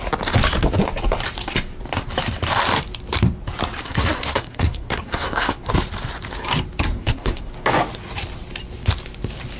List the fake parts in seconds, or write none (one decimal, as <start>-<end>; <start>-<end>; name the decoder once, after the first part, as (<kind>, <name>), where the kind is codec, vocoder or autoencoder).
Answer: 3.8-5.7 (codec, SNAC); 6.9-7.5

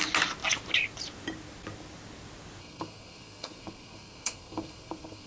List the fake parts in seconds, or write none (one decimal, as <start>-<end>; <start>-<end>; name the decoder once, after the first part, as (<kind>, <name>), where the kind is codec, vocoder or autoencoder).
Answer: 2.6-5.3 (codec, SNAC)

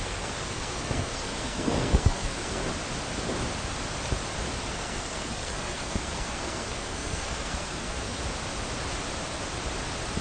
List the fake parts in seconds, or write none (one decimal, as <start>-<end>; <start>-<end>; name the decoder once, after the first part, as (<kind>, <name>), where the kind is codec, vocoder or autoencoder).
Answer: 0.0-2.6 (codec, SNAC); 4.7-8.2

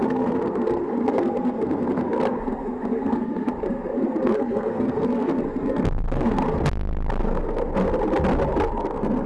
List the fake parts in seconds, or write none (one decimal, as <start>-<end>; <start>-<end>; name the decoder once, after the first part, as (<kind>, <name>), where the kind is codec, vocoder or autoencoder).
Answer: 0.0-6.4 (codec, SNAC); 7.2-7.8; 8.8-9.3